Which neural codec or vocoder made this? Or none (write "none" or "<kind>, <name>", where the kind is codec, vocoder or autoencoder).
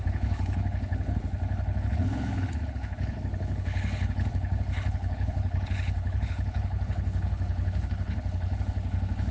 codec, HILCodec